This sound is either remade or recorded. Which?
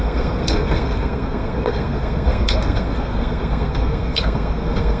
remade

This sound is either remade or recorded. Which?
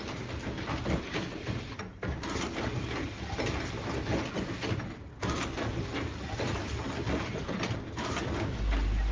recorded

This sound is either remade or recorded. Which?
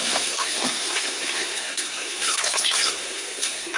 remade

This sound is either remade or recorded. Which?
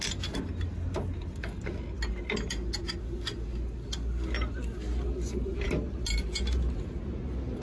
recorded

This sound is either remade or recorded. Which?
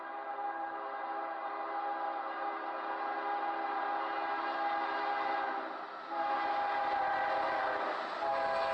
recorded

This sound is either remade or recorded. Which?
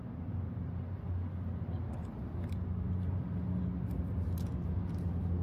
recorded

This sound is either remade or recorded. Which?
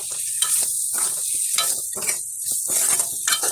recorded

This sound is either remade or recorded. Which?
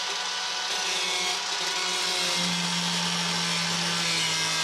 recorded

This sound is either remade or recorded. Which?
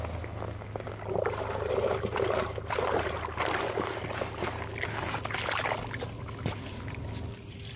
recorded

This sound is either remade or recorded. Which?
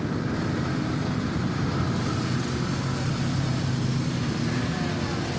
recorded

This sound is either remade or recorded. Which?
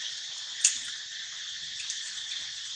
recorded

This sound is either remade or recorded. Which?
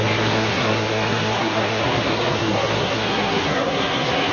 remade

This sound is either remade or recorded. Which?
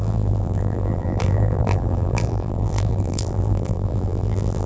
remade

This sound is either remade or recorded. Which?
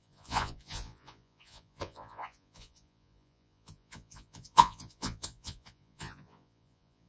remade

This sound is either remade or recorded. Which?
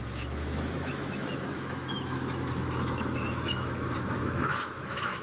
remade